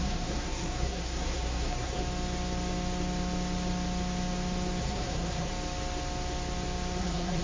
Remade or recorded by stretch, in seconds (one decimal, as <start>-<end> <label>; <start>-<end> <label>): 0.0-2.0 remade; 2.0-4.8 recorded; 4.8-5.5 remade; 5.5-7.0 recorded; 7.0-7.4 remade